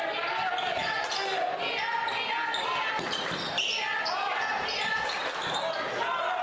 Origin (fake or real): real